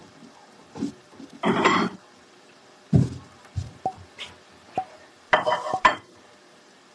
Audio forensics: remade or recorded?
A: remade